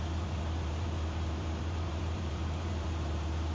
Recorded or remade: remade